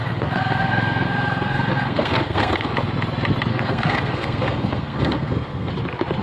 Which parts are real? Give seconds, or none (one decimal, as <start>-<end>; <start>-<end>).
2.7-3.5; 5.7-6.2